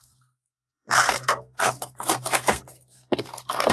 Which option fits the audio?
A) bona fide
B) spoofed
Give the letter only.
B